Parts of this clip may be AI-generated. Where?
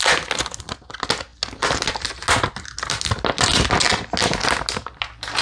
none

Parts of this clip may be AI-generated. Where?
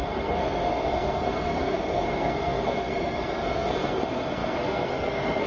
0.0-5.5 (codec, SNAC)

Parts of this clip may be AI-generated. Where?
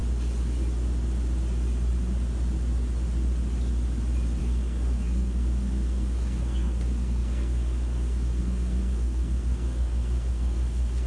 4.4-11.1 (codec, SNAC)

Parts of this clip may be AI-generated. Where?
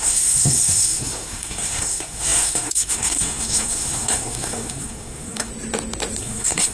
0.0-5.5 (codec, SNAC); 6.2-6.7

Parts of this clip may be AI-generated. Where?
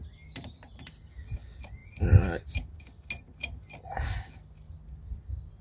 none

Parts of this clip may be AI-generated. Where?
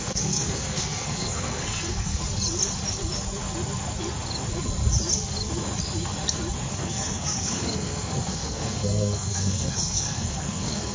0.0-2.2 (codec, SNAC); 6.7-10.9